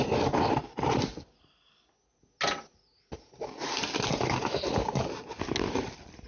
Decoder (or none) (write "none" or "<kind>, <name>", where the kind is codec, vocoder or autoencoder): none